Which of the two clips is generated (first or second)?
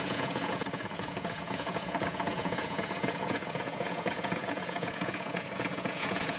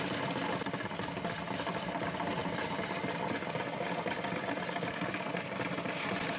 first